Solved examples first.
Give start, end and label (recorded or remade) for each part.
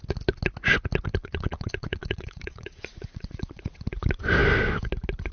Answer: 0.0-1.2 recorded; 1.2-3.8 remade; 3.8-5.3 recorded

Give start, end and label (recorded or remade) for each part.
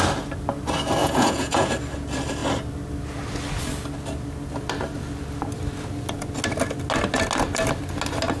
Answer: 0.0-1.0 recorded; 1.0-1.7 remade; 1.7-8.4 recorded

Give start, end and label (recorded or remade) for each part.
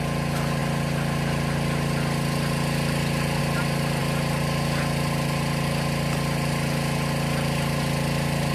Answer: 0.0-8.5 recorded